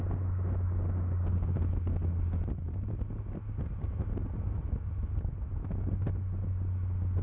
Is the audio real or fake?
real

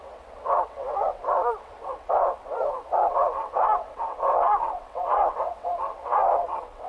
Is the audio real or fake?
fake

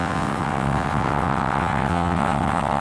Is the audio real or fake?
fake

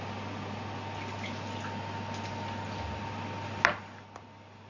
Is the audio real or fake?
real